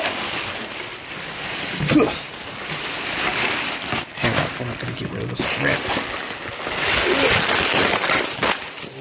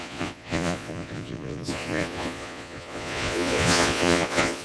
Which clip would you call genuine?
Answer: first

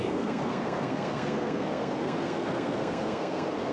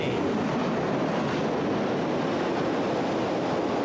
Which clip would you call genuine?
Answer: second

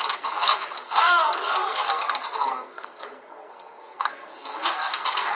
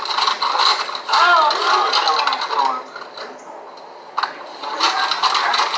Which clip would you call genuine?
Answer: second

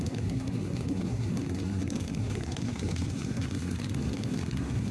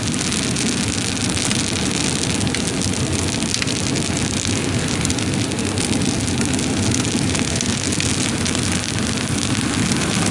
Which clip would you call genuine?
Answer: second